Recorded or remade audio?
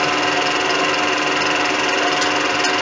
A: recorded